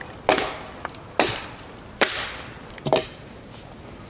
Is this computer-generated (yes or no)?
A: yes